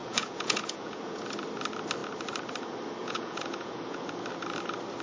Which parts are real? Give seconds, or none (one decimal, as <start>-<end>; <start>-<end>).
1.2-3.0; 4.0-5.0